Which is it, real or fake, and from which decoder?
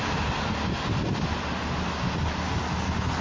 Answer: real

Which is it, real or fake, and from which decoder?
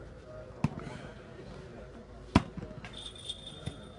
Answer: real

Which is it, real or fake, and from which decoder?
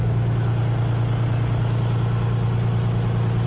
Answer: real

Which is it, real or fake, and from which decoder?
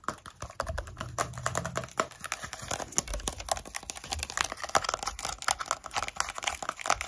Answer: real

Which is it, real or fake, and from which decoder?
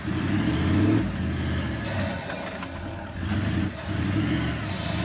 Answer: real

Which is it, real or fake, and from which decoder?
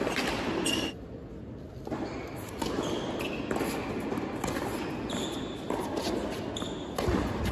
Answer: real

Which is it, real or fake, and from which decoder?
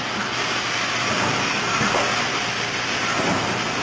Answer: real